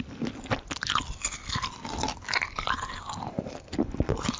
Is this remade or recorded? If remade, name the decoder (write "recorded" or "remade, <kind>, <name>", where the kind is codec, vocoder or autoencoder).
recorded